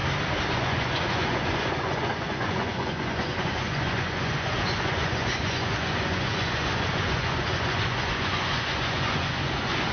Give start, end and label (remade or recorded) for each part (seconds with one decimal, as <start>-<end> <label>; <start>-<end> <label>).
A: 0.0-0.5 recorded; 0.5-9.9 remade